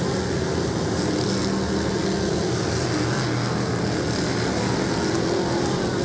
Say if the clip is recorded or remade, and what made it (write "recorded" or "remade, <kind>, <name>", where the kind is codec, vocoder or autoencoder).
recorded